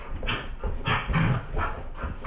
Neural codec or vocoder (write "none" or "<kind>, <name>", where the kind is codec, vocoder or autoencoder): none